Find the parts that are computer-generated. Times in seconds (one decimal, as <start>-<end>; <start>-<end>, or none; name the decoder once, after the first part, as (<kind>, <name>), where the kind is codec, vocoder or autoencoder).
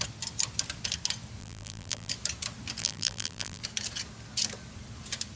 1.4-2.1 (vocoder, BigVGAN v2); 2.8-3.6